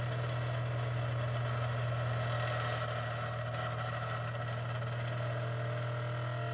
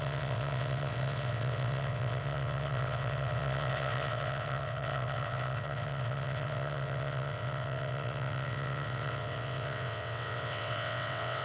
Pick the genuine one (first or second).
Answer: first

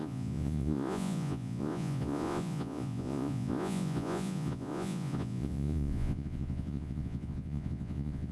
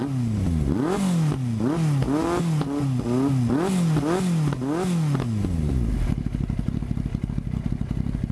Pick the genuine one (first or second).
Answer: second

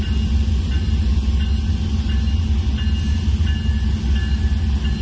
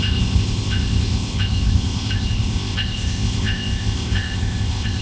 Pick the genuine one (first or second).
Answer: first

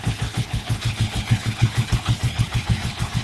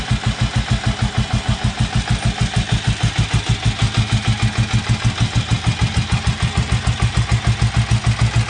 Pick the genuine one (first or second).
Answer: second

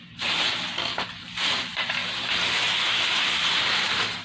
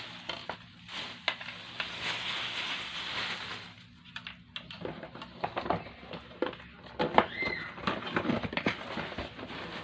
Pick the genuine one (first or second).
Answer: second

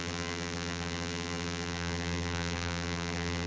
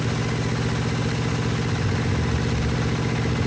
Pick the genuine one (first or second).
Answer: second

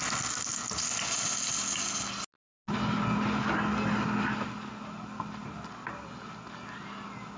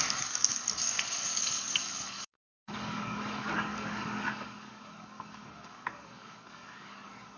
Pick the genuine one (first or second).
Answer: first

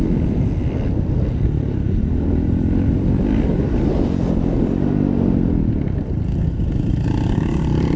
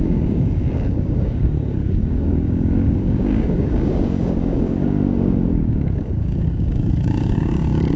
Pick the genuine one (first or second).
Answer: first